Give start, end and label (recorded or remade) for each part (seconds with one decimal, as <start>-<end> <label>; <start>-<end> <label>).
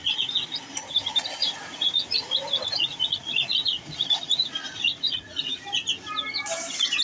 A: 0.0-0.6 remade; 0.6-1.4 recorded; 1.4-5.6 remade; 5.6-7.0 recorded